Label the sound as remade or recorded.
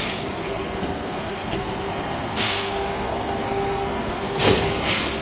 remade